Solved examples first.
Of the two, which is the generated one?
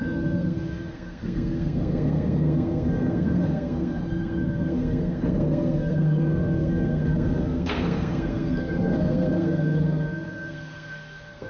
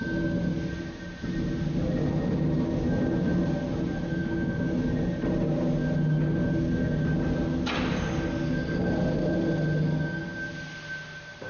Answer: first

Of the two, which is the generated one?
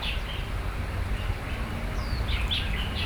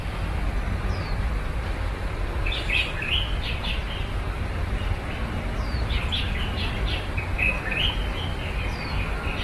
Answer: second